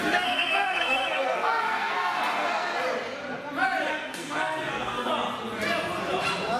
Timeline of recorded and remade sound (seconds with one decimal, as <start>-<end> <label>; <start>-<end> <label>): 0.0-2.7 remade; 2.7-3.9 recorded; 3.9-5.1 remade; 5.1-6.6 recorded

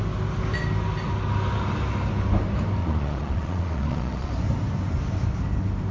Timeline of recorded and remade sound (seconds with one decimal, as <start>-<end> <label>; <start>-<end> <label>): 0.0-2.8 recorded; 2.8-4.3 remade; 4.3-5.9 recorded

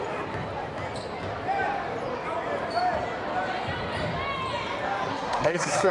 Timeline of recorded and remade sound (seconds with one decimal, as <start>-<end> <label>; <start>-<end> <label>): 0.0-5.1 recorded; 5.1-5.9 remade

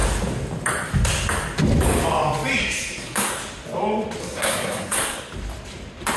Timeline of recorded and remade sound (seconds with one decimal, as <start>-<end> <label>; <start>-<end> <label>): 0.0-2.6 recorded; 2.6-3.3 remade; 3.3-4.2 recorded; 4.2-5.2 remade; 5.2-6.2 recorded

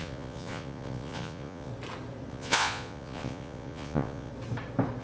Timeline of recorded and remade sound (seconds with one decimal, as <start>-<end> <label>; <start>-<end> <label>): 0.0-1.7 remade; 1.7-2.3 recorded; 2.3-4.3 remade; 4.3-5.0 recorded

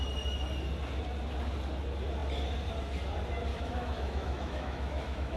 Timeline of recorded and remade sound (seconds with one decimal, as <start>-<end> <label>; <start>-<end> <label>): 0.0-3.5 recorded; 3.5-5.4 remade